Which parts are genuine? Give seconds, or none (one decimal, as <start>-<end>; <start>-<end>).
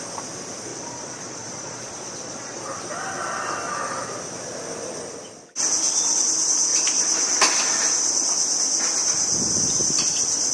0.0-0.7; 2.6-10.5